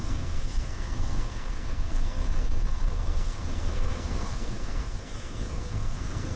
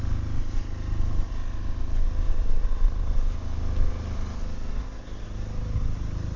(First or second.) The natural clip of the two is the second